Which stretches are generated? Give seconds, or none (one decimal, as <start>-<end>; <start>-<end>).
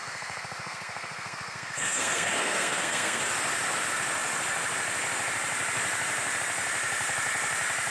0.0-3.2